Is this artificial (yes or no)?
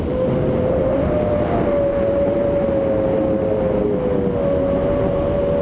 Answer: no